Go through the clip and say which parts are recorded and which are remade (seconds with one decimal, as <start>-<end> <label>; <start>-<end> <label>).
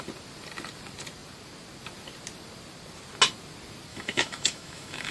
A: 0.0-3.9 recorded; 3.9-5.1 remade